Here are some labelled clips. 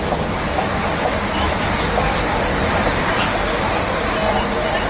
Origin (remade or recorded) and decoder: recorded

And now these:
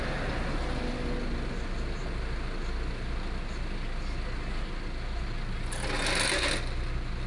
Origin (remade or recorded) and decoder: recorded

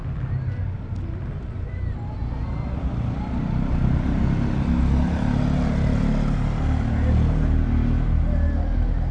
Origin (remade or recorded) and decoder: recorded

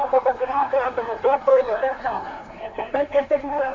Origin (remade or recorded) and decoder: remade, codec, SNAC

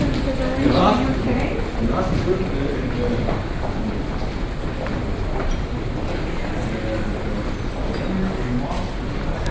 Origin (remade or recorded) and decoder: recorded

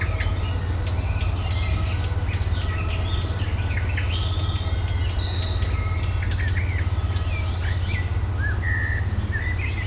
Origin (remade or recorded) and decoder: recorded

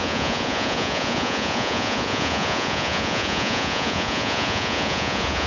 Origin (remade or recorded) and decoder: remade, vocoder, Vocos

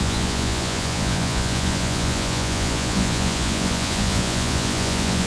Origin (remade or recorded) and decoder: remade, vocoder, Vocos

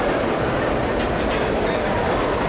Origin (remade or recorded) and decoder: recorded